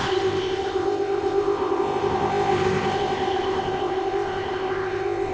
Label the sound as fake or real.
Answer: fake